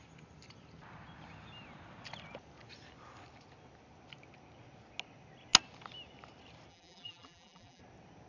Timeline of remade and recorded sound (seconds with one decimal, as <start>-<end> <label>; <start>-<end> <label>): 0.0-6.7 recorded; 6.7-7.8 remade; 7.8-8.3 recorded